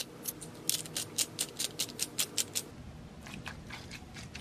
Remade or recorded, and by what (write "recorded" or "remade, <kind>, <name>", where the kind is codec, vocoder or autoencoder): recorded